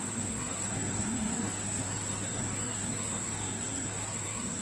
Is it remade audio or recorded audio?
remade